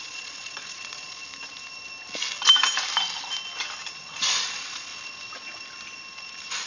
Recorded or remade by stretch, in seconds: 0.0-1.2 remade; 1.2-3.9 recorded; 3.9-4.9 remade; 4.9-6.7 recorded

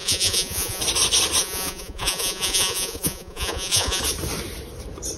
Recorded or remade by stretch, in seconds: 0.0-0.8 remade; 0.8-1.4 recorded; 1.4-4.0 remade; 4.0-5.2 recorded